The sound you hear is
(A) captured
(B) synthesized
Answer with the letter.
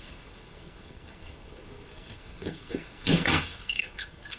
B